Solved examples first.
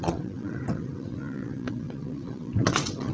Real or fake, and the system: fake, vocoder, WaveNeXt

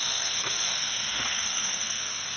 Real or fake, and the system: fake, codec, SNAC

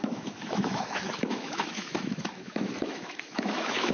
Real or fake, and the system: fake, autoencoder, DAC-VAE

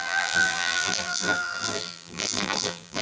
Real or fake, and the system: fake, vocoder, BigVGAN v2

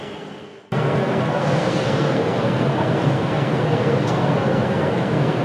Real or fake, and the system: fake, codec, SNAC